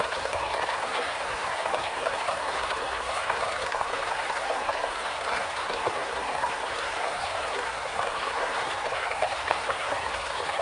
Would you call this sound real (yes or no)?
no